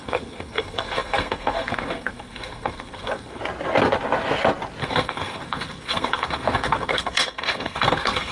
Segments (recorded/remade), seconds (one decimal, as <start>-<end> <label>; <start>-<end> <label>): 0.0-3.4 remade; 3.4-4.8 recorded; 4.8-8.3 remade